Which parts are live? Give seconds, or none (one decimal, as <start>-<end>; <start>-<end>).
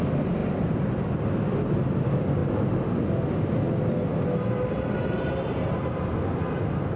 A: 0.0-0.4; 1.2-7.0